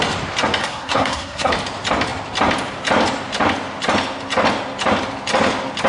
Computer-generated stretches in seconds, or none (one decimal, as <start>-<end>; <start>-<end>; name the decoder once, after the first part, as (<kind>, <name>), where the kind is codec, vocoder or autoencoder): 0.6-1.5 (codec, SNAC)